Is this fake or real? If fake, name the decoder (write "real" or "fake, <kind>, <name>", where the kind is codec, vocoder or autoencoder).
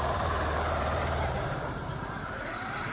fake, vocoder, BigVGAN v2